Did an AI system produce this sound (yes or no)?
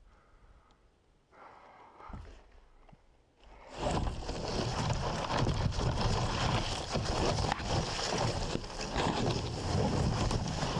no